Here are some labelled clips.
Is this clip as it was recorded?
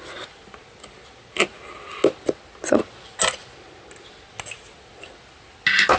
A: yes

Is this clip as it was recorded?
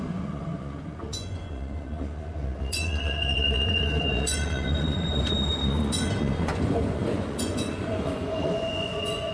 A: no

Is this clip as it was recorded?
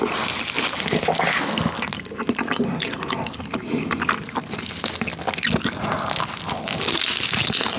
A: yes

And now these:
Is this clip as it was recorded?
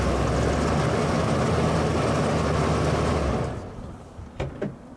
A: yes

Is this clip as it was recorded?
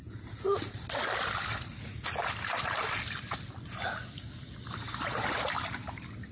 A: yes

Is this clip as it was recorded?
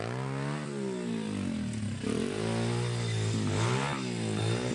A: yes